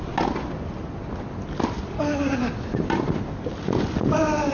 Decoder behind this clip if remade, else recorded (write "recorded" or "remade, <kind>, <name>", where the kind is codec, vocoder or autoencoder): recorded